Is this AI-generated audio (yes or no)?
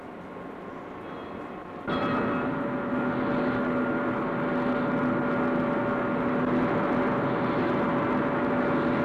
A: no